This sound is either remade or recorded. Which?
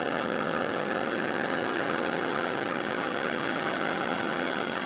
remade